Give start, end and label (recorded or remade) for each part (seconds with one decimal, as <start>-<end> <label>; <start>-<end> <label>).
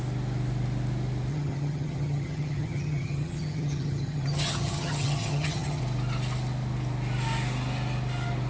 0.0-1.3 recorded; 1.3-5.8 remade; 5.8-8.5 recorded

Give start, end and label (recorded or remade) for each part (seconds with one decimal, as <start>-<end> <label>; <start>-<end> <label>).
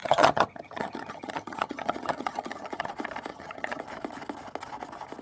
0.0-2.9 remade; 2.9-3.3 recorded; 3.3-3.8 remade; 3.8-5.2 recorded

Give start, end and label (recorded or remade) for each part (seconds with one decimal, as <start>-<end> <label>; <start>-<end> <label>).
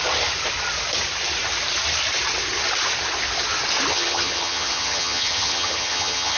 0.0-3.9 recorded; 3.9-6.4 remade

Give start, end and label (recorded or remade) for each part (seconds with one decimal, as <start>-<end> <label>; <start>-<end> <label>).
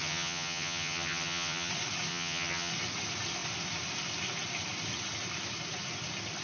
0.0-1.7 remade; 1.7-2.1 recorded; 2.1-2.7 remade; 2.7-6.4 recorded